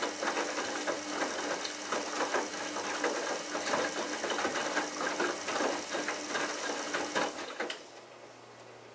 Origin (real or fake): real